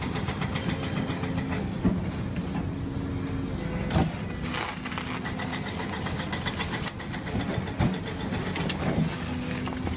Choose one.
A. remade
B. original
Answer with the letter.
B